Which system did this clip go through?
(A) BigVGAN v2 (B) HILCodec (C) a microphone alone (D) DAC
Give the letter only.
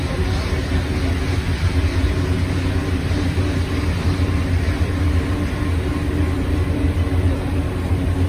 C